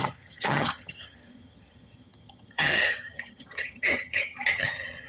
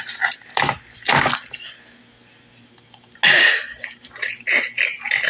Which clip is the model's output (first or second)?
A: first